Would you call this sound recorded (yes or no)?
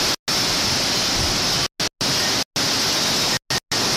yes